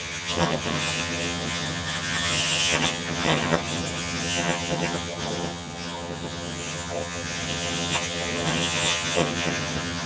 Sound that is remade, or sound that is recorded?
remade